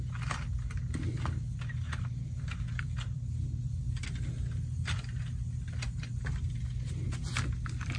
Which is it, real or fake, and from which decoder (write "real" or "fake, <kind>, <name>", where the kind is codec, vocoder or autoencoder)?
real